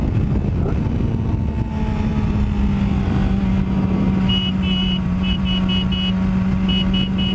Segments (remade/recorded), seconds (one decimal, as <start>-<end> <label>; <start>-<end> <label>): 0.0-4.8 recorded; 4.8-5.4 remade; 5.4-7.3 recorded